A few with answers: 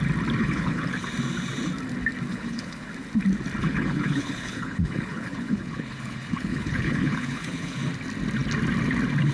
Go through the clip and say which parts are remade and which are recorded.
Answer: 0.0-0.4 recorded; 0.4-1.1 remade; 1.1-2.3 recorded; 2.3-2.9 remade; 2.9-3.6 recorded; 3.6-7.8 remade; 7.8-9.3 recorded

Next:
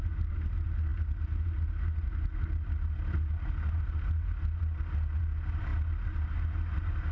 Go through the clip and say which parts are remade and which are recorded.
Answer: 0.0-7.1 recorded

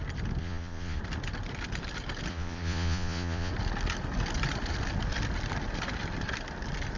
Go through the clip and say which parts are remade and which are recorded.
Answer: 0.0-0.4 recorded; 0.4-1.0 remade; 1.0-2.3 recorded; 2.3-3.5 remade; 3.5-7.0 recorded

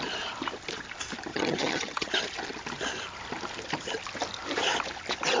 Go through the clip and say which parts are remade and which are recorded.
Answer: 0.0-1.3 recorded; 1.3-2.1 remade; 2.1-5.4 recorded

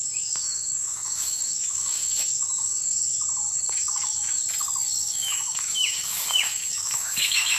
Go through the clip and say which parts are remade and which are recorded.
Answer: 0.0-3.1 remade; 3.1-3.6 recorded; 3.6-4.4 remade; 4.4-5.0 recorded; 5.0-7.6 remade

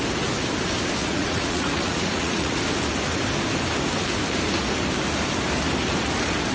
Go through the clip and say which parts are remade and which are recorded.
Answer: 0.0-1.0 recorded; 1.0-2.6 remade; 2.6-6.5 recorded